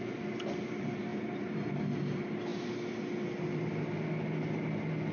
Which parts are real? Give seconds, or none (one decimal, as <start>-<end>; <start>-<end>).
0.0-5.1